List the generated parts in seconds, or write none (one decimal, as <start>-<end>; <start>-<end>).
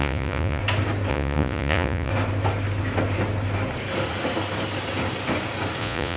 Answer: 0.0-0.6; 1.1-2.1; 5.8-6.2